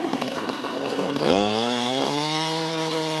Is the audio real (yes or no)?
no